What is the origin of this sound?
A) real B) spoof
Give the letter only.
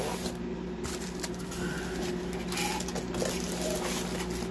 A